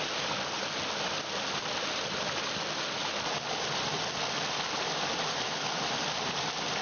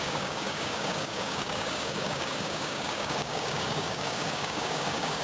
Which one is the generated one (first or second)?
second